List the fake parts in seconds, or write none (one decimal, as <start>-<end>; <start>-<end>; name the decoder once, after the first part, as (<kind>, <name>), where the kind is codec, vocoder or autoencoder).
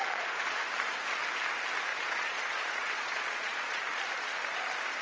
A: 0.0-0.6 (vocoder, Vocos); 1.9-3.8